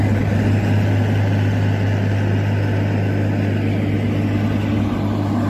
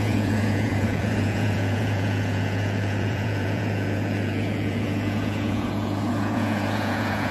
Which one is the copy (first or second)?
second